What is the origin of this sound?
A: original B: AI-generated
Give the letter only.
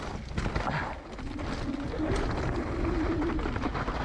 A